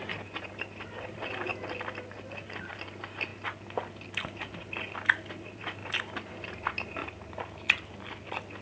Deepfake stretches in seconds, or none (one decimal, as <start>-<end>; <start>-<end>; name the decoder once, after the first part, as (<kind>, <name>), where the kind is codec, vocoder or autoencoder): 0.0-1.5 (vocoder, BigVGAN v2); 2.6-3.3; 5.3-5.8; 6.3-7.0